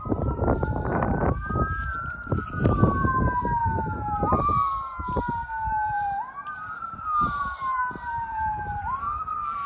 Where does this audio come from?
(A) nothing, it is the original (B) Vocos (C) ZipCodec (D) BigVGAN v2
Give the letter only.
D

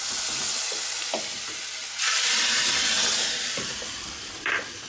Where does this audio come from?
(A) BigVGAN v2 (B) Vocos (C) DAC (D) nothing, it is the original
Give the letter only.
A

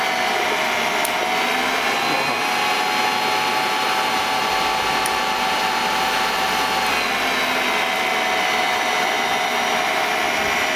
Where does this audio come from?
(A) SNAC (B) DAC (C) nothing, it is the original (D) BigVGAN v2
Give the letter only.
C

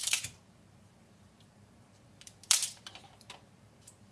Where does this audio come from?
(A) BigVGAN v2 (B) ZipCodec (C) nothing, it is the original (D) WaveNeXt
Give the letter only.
A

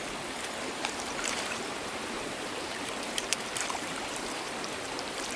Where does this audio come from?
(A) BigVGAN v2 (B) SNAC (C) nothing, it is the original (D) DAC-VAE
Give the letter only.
A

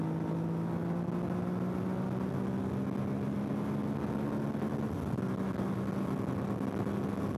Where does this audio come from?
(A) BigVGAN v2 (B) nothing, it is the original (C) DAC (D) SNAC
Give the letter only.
B